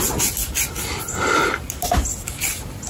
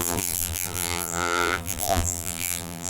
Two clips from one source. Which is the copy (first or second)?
second